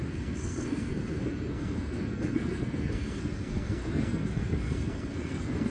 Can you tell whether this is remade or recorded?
remade